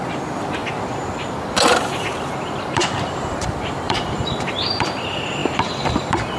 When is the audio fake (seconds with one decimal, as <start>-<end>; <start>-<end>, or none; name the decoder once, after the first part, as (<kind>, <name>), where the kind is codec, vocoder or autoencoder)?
0.0-6.4 (vocoder, BigVGAN v2)